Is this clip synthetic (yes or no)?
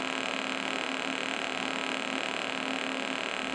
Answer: no